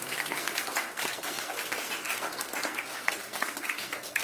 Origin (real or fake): fake